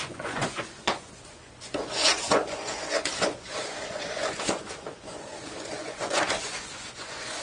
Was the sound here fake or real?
fake